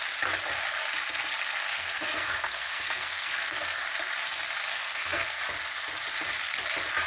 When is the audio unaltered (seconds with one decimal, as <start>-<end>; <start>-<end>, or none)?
0.0-1.7; 3.8-4.7; 5.4-7.1